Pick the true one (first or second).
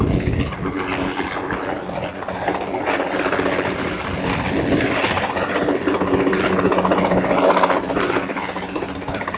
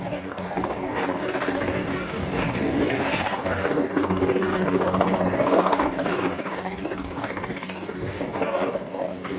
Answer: first